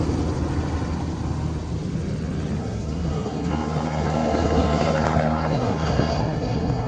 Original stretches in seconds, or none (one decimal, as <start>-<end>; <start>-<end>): 0.0-2.6

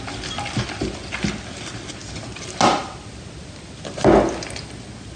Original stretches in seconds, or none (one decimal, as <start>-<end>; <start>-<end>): 0.0-5.2